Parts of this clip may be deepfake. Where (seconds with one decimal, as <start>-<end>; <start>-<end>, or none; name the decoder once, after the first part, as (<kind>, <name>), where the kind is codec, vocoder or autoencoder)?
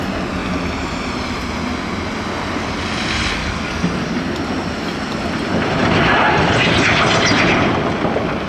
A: 3.4-4.2 (codec, DAC)